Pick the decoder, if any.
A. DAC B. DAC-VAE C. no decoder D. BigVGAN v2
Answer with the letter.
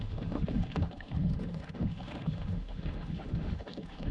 B